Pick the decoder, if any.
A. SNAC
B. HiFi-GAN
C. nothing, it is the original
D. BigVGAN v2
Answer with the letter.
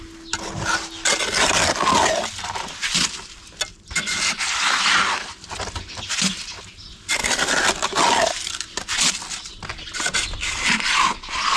C